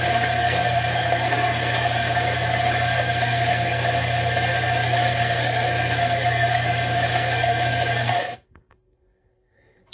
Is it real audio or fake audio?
fake